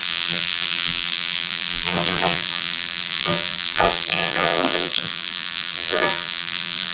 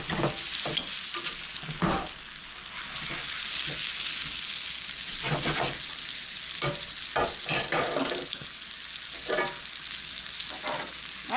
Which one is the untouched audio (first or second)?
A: second